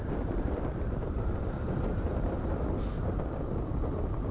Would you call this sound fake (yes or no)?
no